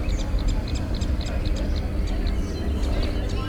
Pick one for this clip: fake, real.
real